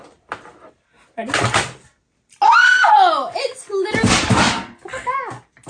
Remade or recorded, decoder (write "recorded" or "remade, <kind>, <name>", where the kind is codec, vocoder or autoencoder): recorded